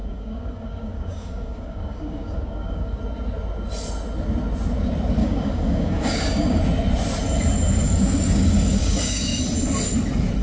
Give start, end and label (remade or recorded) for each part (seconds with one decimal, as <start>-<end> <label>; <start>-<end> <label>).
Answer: 0.0-3.0 remade; 3.0-5.2 recorded; 5.2-6.6 remade; 6.6-8.0 recorded; 8.0-9.4 remade; 9.4-10.4 recorded